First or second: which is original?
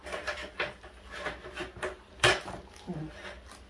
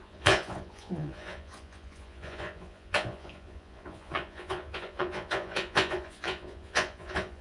first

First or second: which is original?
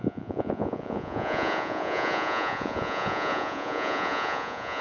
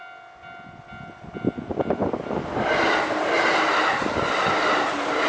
second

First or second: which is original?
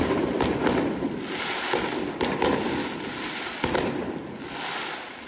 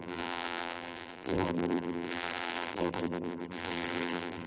first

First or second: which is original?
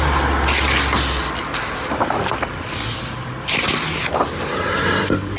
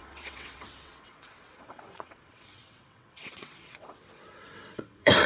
first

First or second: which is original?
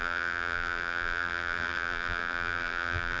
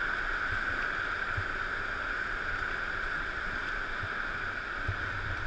second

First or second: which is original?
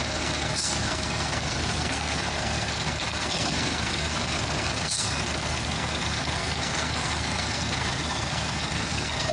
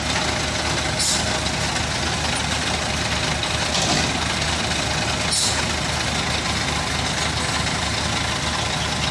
second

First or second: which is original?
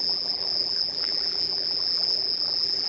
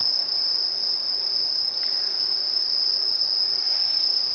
second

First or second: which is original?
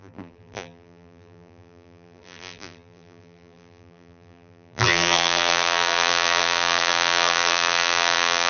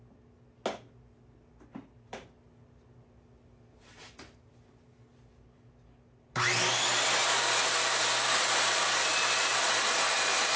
second